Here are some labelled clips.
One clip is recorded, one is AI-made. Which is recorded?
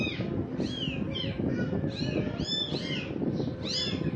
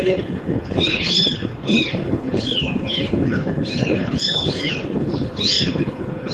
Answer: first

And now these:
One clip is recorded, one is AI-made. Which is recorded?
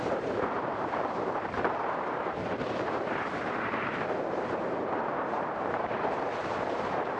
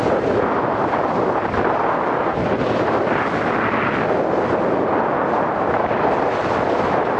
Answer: second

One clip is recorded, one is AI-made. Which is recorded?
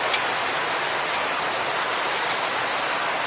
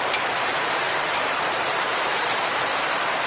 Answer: first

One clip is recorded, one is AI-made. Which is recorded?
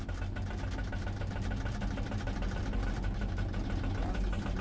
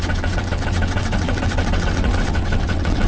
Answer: first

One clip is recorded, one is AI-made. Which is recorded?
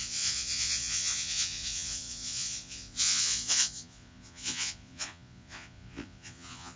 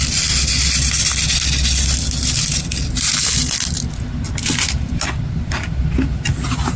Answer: second